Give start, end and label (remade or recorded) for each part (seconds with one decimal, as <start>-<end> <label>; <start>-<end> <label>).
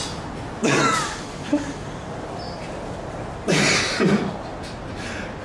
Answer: 0.0-0.6 recorded; 0.6-3.8 remade; 3.8-5.4 recorded